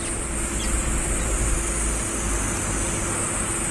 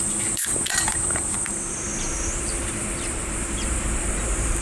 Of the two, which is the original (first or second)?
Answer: first